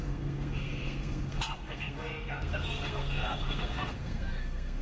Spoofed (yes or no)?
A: yes